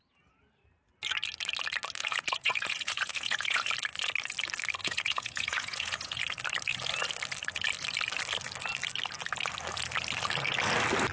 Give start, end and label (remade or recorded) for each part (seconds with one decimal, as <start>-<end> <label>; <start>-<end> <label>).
0.0-2.0 recorded; 2.0-3.7 remade; 3.7-4.8 recorded; 4.8-6.2 remade; 6.2-11.1 recorded

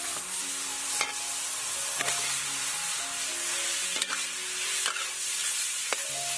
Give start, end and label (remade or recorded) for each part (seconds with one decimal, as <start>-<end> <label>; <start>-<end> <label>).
0.0-6.4 recorded

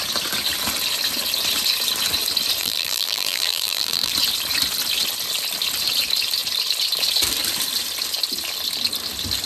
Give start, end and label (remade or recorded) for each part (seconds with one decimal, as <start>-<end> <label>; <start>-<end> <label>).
0.0-2.6 recorded; 2.6-4.1 remade; 4.1-9.5 recorded

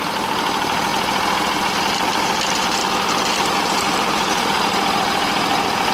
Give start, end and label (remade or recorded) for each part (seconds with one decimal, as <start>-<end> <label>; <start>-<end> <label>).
0.0-0.9 remade; 0.9-1.7 recorded; 1.7-2.8 remade; 2.8-3.3 recorded; 3.3-5.9 remade

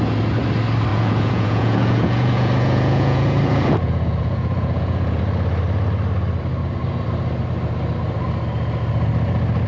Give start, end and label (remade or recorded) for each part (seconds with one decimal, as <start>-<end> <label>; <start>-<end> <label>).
0.0-0.9 recorded; 0.9-5.2 remade; 5.2-9.7 recorded

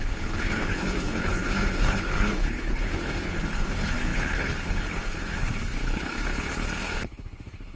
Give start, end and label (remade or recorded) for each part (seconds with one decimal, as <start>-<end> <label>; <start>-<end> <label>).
0.0-7.8 remade

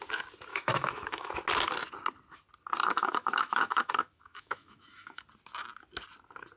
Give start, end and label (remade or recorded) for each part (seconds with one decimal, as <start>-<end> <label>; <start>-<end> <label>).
0.0-0.5 recorded; 0.5-1.3 remade; 1.3-2.8 recorded; 2.8-5.2 remade; 5.2-6.6 recorded

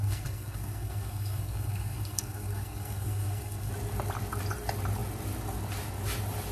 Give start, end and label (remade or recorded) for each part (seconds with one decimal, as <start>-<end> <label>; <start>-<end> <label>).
0.0-3.7 remade; 3.7-6.5 recorded